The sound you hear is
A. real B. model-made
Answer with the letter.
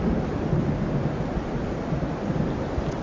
A